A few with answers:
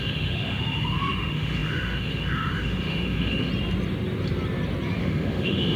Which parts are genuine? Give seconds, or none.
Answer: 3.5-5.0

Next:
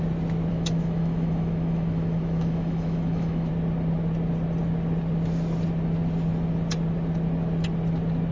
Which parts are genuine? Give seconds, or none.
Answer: 0.0-0.5; 3.5-8.3

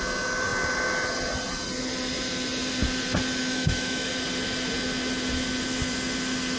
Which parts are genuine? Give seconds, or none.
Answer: 0.0-3.5; 4.1-6.6

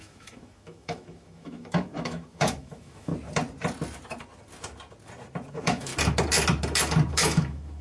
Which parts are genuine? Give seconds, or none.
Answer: 3.1-5.5; 5.9-7.1

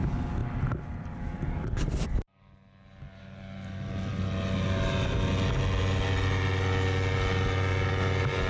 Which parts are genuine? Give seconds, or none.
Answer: 0.0-8.5